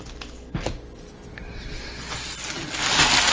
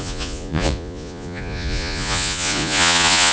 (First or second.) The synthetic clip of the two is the second